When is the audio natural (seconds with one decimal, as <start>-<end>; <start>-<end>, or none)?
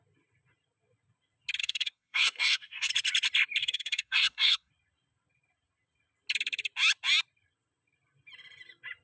0.0-1.6; 2.9-3.6; 4.7-9.0